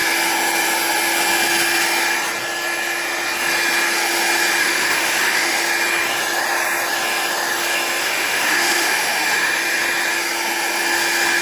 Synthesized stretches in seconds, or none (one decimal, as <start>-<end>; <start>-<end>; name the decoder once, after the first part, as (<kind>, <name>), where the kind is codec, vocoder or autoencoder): 4.6-5.6 (autoencoder, DAC-VAE); 8.0-9.6